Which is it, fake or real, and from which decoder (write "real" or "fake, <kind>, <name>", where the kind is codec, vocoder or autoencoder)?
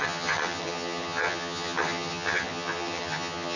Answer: fake, vocoder, HiFi-GAN